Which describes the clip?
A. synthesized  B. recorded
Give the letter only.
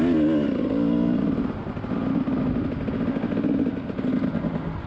B